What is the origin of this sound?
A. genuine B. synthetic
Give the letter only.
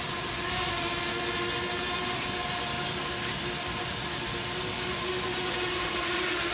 A